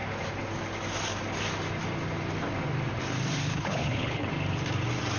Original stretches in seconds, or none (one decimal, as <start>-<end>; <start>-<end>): 0.0-3.5; 4.3-5.2